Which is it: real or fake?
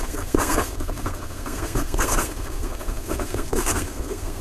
fake